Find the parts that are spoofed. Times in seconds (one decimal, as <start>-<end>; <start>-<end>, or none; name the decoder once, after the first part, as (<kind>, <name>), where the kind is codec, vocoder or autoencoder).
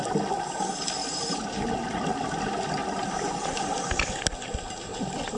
1.0-1.6 (vocoder, BigVGAN v2); 2.8-3.3; 4.9-5.4